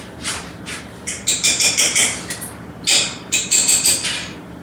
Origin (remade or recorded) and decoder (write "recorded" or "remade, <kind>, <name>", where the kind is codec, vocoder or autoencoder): remade, vocoder, BigVGAN v2